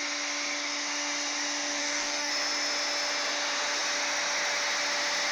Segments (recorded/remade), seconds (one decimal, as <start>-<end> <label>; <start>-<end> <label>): 0.0-1.8 recorded; 1.8-2.3 remade; 2.3-5.3 recorded